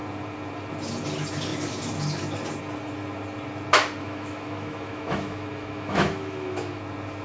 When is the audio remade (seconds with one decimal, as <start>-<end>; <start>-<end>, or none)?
4.0-6.8